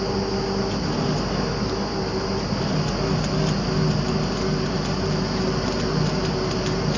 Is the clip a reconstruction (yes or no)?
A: no